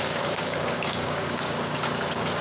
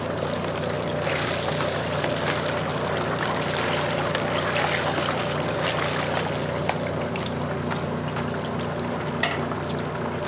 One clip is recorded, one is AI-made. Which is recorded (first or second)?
second